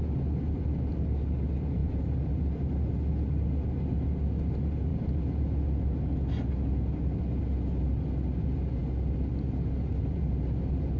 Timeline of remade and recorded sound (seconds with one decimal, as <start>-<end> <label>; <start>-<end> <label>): 0.0-11.0 recorded

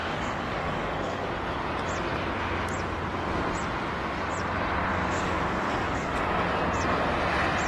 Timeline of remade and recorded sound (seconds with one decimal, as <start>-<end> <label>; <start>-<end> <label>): 0.0-1.3 remade; 1.3-4.9 recorded; 4.9-6.2 remade; 6.2-7.7 recorded

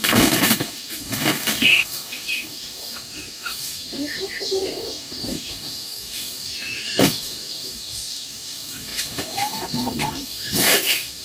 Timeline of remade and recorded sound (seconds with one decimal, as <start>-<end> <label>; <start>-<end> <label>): 0.0-11.2 remade